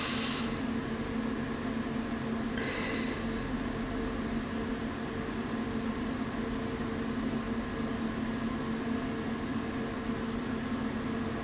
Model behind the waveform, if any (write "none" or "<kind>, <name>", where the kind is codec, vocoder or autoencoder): none